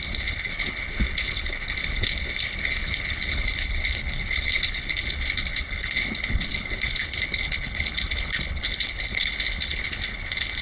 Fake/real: fake